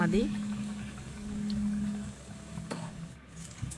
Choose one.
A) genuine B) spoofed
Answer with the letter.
B